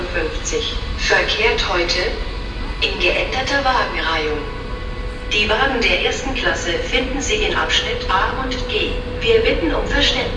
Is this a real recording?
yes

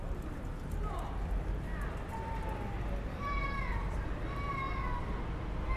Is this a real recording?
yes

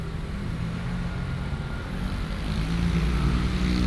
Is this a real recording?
yes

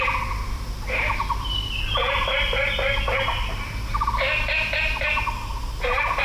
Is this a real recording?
yes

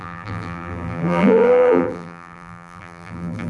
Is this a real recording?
no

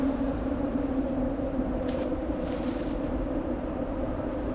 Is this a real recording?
no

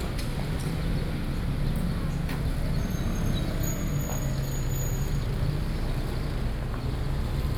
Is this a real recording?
yes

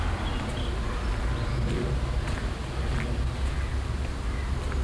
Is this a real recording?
yes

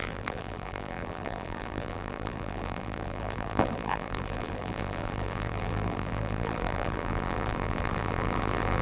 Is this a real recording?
no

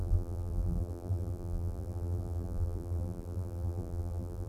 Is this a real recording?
no